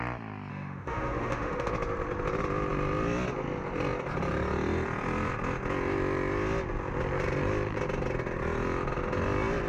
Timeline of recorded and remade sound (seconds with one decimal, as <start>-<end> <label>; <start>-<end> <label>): 0.0-0.5 recorded; 0.5-1.7 remade; 1.7-9.7 recorded